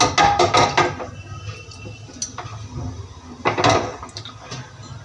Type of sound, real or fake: real